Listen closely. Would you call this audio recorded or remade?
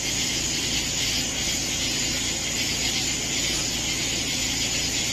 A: recorded